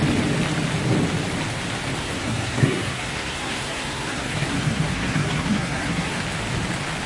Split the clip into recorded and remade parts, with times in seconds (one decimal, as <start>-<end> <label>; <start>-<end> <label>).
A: 0.0-2.0 recorded; 2.0-6.2 remade; 6.2-7.1 recorded